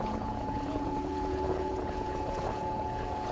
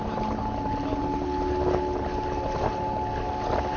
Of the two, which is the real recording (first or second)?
second